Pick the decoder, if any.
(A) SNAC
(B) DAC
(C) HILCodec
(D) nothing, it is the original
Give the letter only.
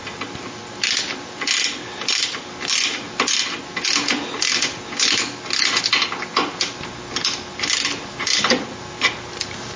D